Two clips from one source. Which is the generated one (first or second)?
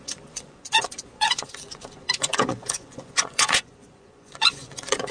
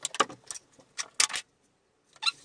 first